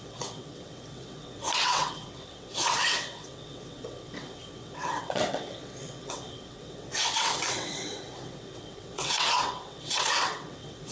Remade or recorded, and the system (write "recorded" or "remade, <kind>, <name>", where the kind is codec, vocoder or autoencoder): remade, vocoder, WaveNeXt